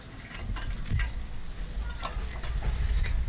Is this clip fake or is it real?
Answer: real